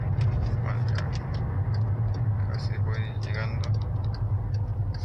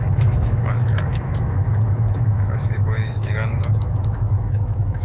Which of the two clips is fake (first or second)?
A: second